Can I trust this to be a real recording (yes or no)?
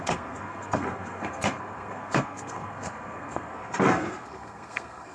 no